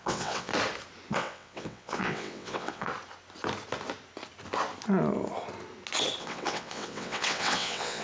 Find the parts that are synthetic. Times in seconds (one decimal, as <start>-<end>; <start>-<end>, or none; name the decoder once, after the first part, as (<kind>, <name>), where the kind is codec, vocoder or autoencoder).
0.0-0.5 (vocoder, WaveNeXt); 1.1-2.9; 6.2-8.0